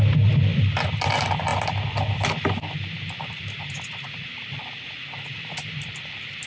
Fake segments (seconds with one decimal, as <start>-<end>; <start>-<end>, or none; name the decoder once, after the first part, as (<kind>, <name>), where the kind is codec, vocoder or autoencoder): none